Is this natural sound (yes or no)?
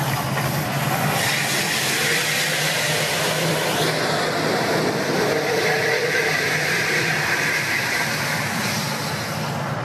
no